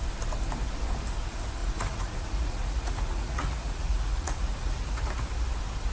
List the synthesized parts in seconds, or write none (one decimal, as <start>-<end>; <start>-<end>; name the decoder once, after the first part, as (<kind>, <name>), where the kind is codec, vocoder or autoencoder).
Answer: 1.6-5.1 (vocoder, Vocos)